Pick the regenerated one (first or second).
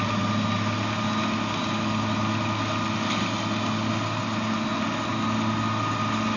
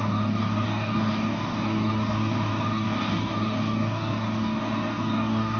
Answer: second